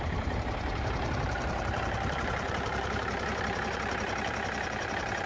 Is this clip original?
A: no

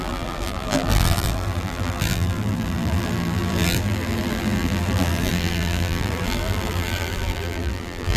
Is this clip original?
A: no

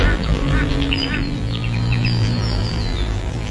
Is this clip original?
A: no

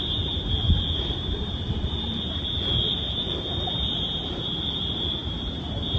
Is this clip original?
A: no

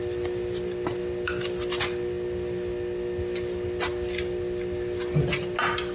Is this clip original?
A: yes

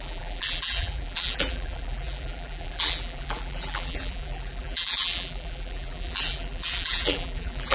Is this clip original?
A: no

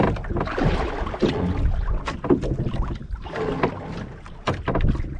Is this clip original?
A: yes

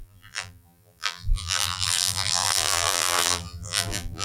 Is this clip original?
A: no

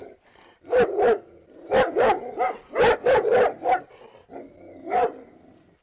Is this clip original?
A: yes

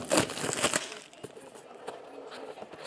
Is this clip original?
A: yes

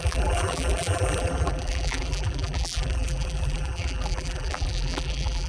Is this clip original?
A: no